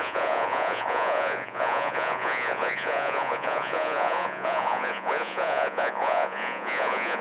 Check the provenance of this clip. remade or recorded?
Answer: remade